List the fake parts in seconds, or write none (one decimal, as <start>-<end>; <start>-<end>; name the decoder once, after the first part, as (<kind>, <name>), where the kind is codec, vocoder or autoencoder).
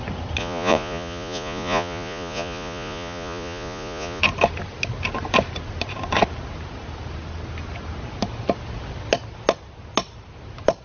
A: 0.4-4.2 (vocoder, Vocos)